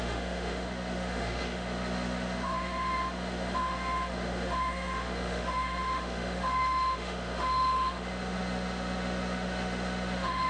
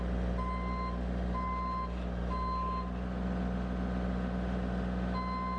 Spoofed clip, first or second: first